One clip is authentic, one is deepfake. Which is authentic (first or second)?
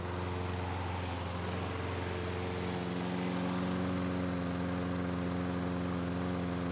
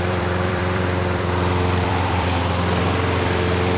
first